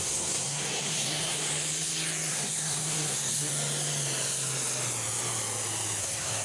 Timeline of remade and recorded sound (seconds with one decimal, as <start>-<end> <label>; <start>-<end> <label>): 0.0-1.5 remade; 1.5-2.3 recorded; 2.3-3.5 remade; 3.5-6.0 recorded; 6.0-6.4 remade